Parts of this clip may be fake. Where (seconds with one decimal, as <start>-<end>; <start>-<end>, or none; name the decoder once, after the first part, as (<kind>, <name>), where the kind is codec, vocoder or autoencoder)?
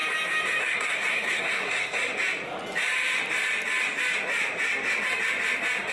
0.6-2.1 (codec, SNAC)